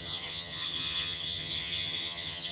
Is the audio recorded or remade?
remade